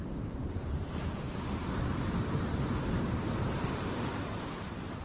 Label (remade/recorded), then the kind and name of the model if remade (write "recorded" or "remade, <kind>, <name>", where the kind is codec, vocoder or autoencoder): remade, vocoder, BigVGAN v2